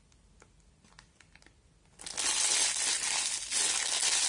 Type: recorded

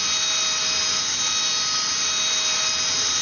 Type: recorded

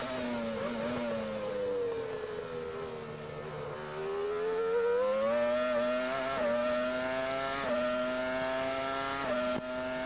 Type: recorded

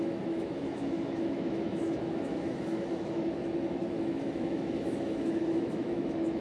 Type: remade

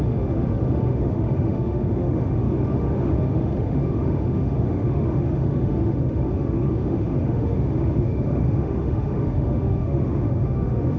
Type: remade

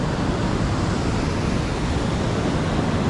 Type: recorded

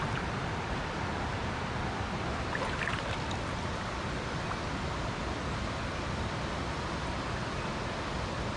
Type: recorded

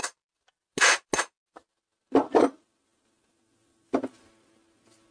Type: recorded